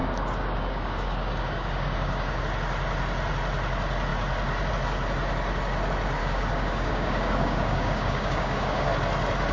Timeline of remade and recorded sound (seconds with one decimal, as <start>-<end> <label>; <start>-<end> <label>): 0.0-2.4 remade; 2.4-6.2 recorded; 6.2-8.9 remade; 8.9-9.5 recorded